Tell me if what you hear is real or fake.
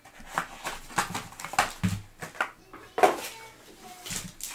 real